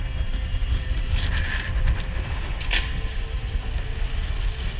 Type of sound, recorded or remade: recorded